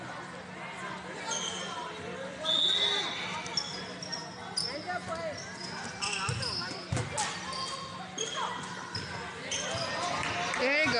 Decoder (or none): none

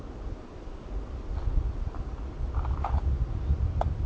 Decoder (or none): none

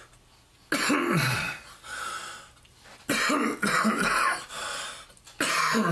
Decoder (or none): none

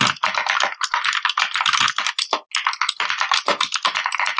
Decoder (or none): none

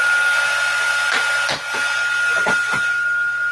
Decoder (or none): none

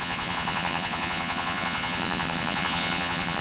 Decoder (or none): vocoder, Vocos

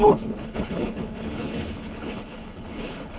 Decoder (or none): codec, HILCodec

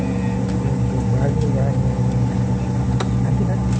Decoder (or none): none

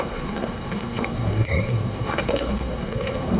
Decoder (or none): codec, SNAC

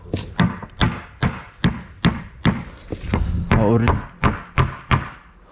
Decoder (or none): none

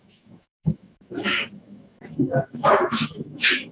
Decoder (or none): autoencoder, DAC-VAE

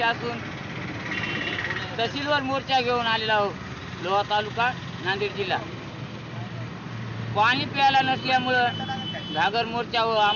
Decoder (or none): none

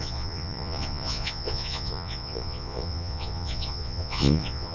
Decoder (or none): vocoder, Vocos